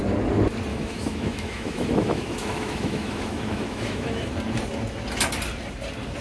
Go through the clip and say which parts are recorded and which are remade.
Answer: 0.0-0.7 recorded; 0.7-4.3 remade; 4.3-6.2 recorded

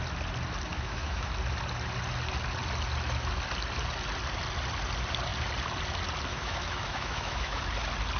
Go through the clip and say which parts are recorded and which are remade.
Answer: 0.0-0.7 recorded; 0.7-1.3 remade; 1.3-6.3 recorded; 6.3-7.6 remade; 7.6-8.2 recorded

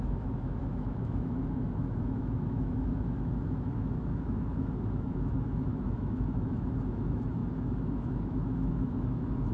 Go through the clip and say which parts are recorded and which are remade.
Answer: 0.0-9.5 remade

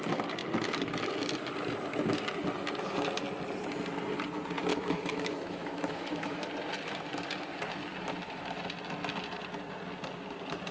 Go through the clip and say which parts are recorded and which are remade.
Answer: 0.0-4.7 recorded; 4.7-6.5 remade; 6.5-10.7 recorded

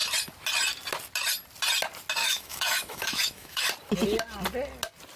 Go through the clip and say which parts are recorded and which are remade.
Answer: 0.0-2.2 recorded; 2.2-3.7 remade; 3.7-5.2 recorded

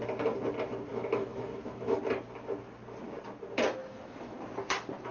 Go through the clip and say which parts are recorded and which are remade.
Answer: 0.0-0.9 recorded; 0.9-2.0 remade; 2.0-3.8 recorded; 3.8-4.4 remade; 4.4-5.1 recorded

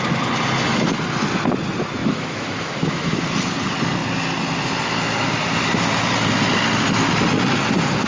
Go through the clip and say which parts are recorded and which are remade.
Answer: 0.0-2.0 recorded; 2.0-3.2 remade; 3.2-8.1 recorded